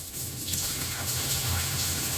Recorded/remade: remade